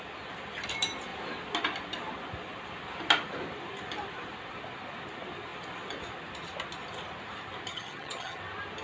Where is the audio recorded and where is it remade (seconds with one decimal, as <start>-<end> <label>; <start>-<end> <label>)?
0.0-7.7 recorded; 7.7-8.4 remade; 8.4-8.8 recorded